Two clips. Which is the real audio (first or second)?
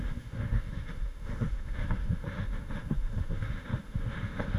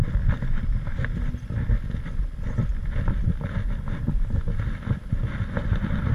second